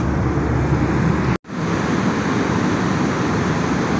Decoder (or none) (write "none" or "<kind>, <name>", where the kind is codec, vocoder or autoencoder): none